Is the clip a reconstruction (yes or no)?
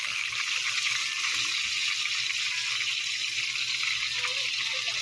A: no